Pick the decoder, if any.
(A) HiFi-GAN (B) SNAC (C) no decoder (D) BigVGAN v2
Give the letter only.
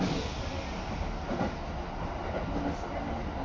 C